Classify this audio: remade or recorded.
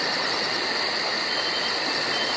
recorded